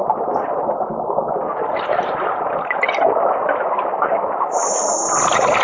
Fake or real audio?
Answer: real